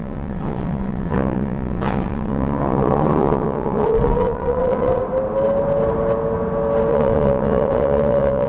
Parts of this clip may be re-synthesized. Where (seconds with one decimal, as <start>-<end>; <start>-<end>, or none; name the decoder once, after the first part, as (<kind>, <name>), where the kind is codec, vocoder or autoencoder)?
0.0-5.0 (vocoder, WaveNeXt); 6.9-8.5